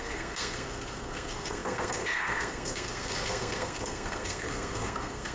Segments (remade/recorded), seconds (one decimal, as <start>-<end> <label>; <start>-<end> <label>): 0.0-5.3 remade